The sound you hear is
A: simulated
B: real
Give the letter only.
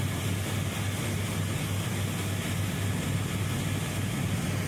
B